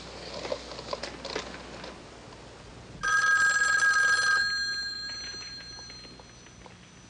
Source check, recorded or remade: recorded